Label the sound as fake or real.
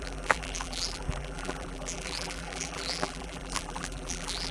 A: fake